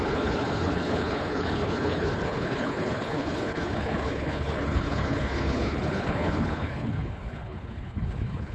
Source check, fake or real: fake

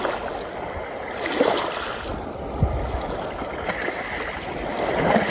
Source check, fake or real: real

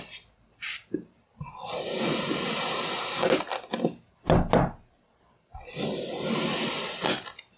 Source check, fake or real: real